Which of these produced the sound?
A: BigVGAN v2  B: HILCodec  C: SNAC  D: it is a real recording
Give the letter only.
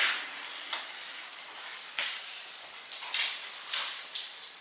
A